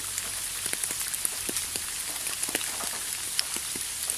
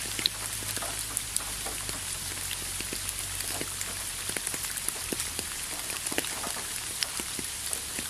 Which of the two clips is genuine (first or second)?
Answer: first